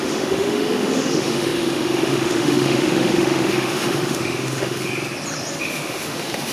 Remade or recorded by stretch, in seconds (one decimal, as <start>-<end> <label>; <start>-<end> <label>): 0.0-4.9 remade; 4.9-5.6 recorded; 5.6-6.5 remade